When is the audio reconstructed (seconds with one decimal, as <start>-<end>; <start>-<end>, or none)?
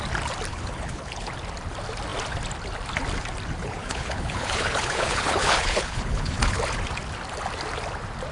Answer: 0.5-1.3; 3.6-6.6